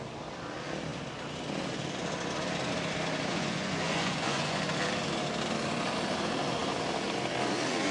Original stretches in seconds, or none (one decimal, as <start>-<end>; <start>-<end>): 0.0-3.3; 4.6-7.9

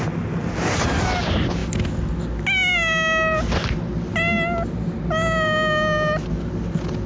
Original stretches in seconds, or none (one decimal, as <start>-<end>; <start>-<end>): 0.0-7.1